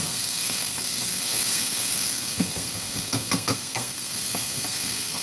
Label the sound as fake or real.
fake